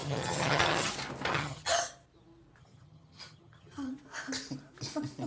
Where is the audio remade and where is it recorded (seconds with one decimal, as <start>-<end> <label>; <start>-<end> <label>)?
0.0-0.9 remade; 0.9-1.3 recorded; 1.3-1.8 remade; 1.8-2.6 recorded; 2.6-3.9 remade; 3.9-5.3 recorded